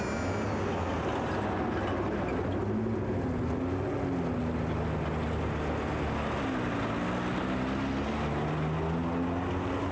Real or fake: real